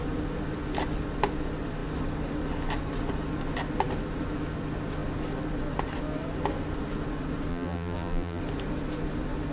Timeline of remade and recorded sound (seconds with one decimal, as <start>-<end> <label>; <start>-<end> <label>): 0.0-7.5 recorded; 7.5-8.4 remade; 8.4-9.5 recorded